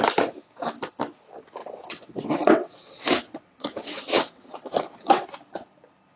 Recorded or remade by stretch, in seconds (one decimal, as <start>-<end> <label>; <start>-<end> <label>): 0.0-1.6 recorded; 1.6-5.3 remade; 5.3-6.2 recorded